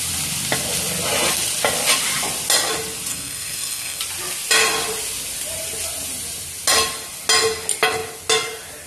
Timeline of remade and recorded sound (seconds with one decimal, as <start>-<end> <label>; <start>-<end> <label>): 0.0-3.1 recorded; 3.1-4.0 remade; 4.0-8.9 recorded